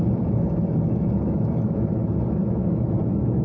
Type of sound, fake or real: fake